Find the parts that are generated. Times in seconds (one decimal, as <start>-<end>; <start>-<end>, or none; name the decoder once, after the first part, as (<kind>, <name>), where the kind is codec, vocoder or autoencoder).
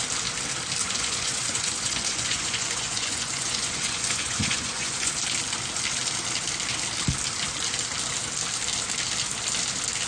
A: 0.8-5.1 (vocoder, Vocos)